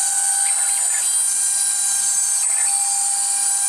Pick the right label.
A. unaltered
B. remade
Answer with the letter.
A